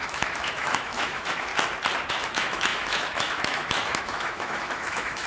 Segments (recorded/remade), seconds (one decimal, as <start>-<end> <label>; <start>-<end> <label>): 0.0-1.5 remade; 1.5-2.1 recorded; 2.1-5.3 remade